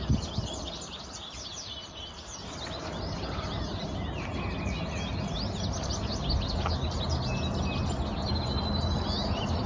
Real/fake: real